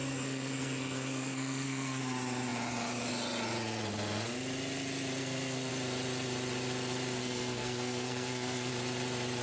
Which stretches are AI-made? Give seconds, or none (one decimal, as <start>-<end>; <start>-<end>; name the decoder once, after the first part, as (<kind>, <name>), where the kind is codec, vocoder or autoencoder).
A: 0.0-2.0 (codec, SNAC); 5.2-5.7; 7.2-8.7